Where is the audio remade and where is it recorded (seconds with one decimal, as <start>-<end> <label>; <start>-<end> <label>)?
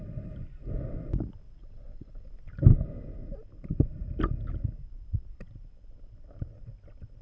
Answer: 0.0-1.6 recorded; 1.6-2.3 remade; 2.3-7.2 recorded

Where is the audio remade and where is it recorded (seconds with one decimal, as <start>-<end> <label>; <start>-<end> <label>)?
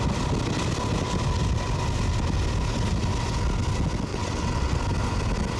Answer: 0.0-4.1 recorded; 4.1-4.8 remade; 4.8-5.6 recorded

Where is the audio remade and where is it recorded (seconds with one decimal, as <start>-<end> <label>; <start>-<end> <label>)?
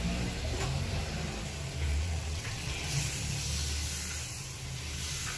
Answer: 0.0-1.9 recorded; 1.9-3.0 remade; 3.0-5.4 recorded